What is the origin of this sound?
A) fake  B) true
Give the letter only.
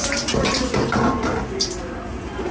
B